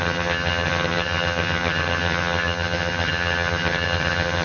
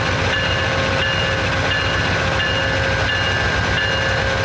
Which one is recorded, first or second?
second